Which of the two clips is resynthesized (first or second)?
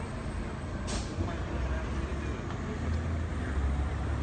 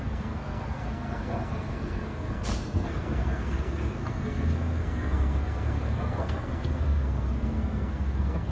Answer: second